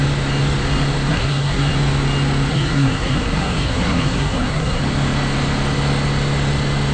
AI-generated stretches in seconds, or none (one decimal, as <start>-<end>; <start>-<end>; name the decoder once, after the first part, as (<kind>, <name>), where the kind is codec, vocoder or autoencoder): 1.1-1.7 (codec, SNAC); 2.5-4.8